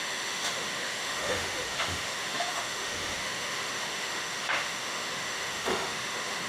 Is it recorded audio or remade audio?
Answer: remade